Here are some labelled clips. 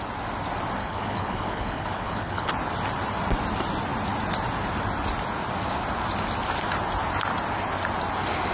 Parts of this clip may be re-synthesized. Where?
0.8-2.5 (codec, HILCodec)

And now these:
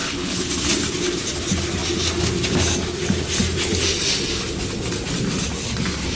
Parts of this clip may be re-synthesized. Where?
0.0-0.5 (codec, HILCodec)